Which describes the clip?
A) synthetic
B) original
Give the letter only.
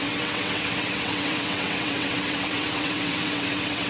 A